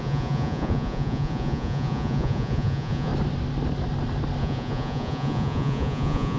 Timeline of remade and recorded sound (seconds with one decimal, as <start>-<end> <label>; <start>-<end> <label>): 0.0-3.1 remade; 3.1-4.4 recorded; 4.4-6.4 remade

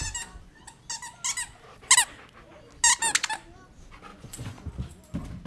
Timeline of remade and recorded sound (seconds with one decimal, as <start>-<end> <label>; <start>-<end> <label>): 0.0-4.1 recorded; 4.1-4.7 remade; 4.7-5.5 recorded

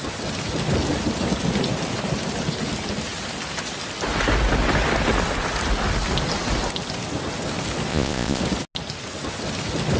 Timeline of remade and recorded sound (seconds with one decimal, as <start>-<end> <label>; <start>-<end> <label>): 0.0-7.9 recorded; 7.9-8.4 remade; 8.4-10.0 recorded